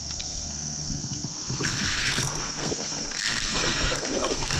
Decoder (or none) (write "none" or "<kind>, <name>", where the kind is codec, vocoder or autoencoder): codec, SNAC